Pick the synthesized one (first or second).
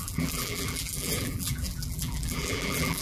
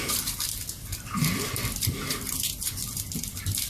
first